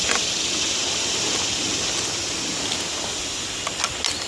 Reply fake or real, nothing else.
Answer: real